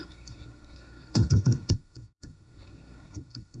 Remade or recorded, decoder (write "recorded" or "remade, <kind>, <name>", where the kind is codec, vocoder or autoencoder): remade, codec, SNAC